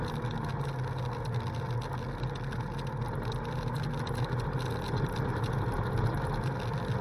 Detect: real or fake real